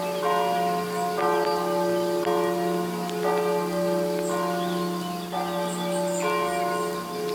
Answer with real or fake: real